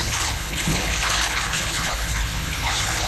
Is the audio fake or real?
fake